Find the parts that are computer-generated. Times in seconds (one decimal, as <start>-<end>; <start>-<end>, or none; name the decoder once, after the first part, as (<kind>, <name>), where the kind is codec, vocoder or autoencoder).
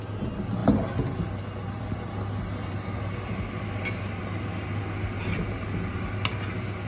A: none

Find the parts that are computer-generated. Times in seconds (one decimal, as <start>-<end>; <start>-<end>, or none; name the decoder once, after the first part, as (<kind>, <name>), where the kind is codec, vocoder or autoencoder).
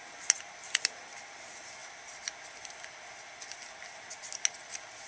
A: none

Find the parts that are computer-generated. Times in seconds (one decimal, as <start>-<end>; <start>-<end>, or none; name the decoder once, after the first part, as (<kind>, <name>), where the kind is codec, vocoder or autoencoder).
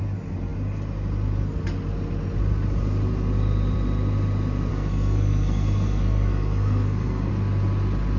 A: 4.7-7.3 (codec, SNAC)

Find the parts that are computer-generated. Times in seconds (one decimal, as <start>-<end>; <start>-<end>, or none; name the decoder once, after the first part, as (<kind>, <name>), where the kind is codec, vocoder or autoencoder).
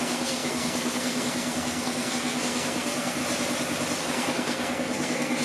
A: 0.0-3.2 (codec, SNAC); 4.0-5.4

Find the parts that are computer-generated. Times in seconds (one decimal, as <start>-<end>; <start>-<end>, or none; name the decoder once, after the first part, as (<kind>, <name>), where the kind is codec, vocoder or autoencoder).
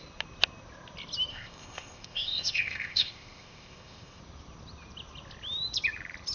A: 1.3-4.2 (codec, ZipCodec)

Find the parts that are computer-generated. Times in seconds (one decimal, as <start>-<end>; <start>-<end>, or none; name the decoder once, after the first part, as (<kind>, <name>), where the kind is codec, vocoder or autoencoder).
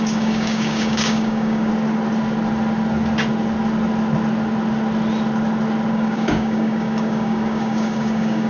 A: 0.0-1.7 (codec, DAC); 5.9-8.5